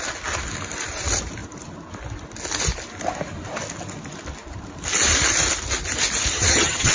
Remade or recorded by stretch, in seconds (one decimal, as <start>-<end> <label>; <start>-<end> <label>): 0.0-6.3 recorded; 6.3-6.9 remade